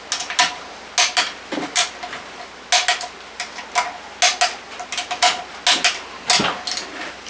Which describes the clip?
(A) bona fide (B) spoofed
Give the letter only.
A